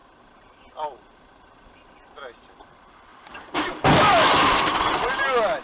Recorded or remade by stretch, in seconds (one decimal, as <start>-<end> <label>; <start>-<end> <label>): 0.0-3.1 remade; 3.1-3.7 recorded; 3.7-4.7 remade; 4.7-5.6 recorded